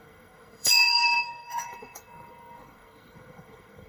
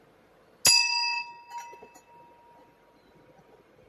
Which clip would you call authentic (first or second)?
second